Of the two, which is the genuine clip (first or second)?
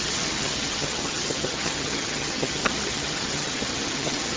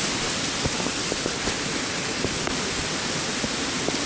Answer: second